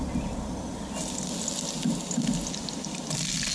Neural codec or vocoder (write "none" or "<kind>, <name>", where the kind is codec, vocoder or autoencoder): none